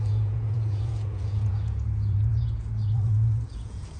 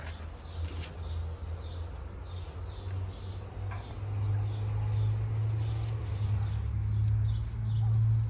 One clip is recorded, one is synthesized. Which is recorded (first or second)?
second